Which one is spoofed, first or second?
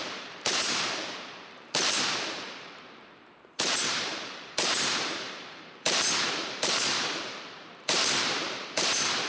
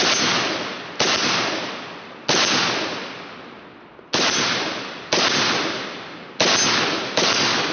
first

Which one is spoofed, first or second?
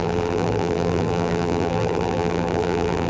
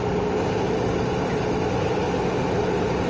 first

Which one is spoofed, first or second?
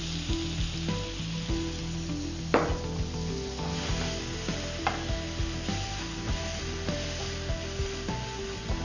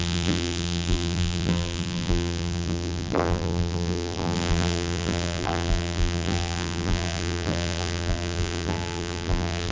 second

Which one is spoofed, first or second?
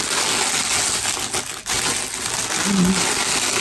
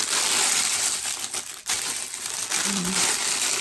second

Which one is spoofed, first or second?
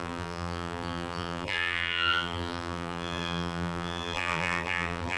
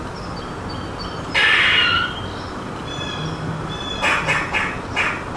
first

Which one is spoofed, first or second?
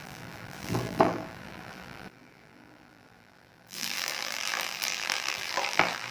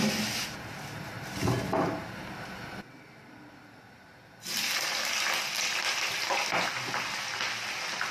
first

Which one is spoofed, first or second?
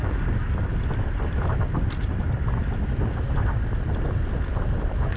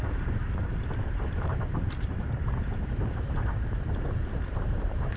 second